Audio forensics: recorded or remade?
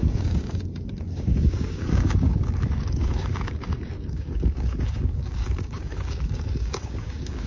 remade